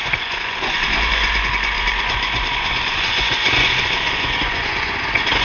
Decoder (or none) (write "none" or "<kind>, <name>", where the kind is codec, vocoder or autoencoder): vocoder, Vocos